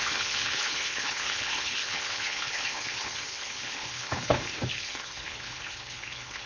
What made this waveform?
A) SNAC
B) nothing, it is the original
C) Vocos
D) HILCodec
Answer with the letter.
D